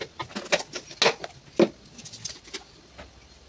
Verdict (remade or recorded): recorded